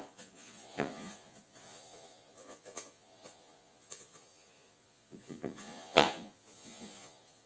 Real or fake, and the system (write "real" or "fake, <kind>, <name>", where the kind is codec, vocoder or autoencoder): fake, vocoder, Vocos